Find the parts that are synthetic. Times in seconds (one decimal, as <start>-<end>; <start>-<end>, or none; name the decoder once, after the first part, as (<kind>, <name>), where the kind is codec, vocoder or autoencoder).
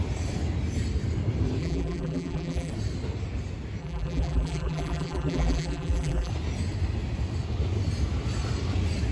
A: 1.6-2.7 (vocoder, BigVGAN v2); 3.8-6.3